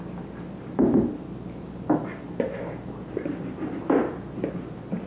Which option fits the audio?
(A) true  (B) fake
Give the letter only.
A